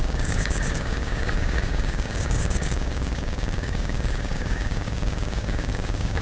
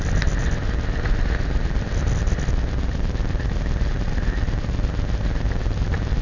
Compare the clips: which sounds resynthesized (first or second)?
first